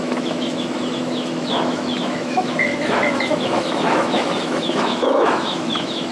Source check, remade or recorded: remade